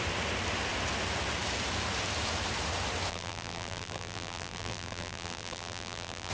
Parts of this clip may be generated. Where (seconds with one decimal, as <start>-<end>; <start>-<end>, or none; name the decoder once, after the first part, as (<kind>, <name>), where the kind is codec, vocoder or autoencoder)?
3.1-6.3 (vocoder, BigVGAN v2)